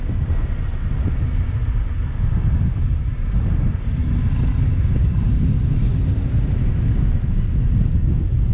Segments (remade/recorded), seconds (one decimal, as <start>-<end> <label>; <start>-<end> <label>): 0.0-8.5 recorded